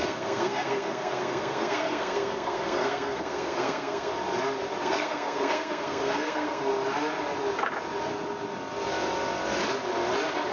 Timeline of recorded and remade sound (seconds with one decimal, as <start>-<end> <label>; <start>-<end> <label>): 0.0-4.1 remade; 4.1-4.8 recorded; 4.8-6.7 remade; 6.7-10.5 recorded